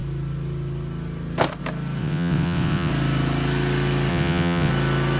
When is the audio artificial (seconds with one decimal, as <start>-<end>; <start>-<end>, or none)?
2.0-2.9; 4.1-4.7